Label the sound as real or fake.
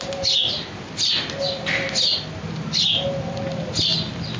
real